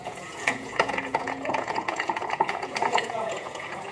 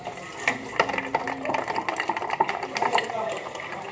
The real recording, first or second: second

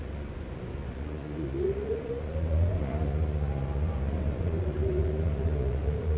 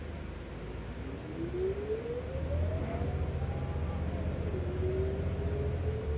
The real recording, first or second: second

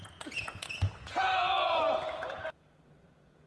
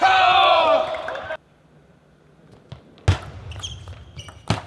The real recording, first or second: second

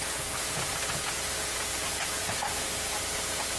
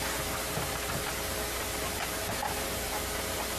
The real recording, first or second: second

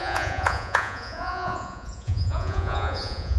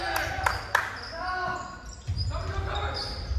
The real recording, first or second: second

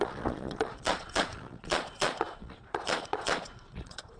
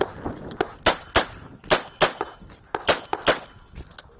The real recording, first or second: second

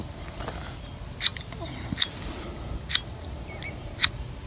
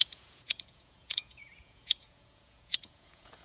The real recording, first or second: first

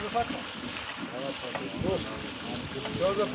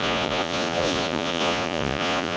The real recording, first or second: first